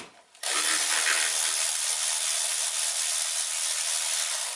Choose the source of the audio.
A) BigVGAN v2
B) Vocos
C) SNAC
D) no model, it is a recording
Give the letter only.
D